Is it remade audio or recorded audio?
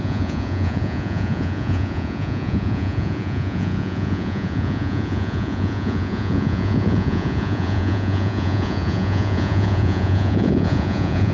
remade